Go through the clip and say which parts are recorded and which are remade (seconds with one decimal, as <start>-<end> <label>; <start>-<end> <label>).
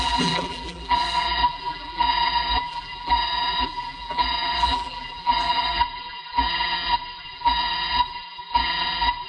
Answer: 0.0-9.3 remade